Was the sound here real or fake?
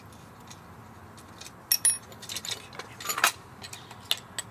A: real